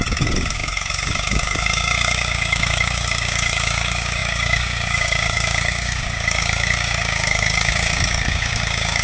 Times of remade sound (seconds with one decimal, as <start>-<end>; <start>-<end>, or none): 0.0-9.0